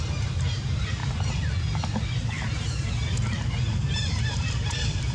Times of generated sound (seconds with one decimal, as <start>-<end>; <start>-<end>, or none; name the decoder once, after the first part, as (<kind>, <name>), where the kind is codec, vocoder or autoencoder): none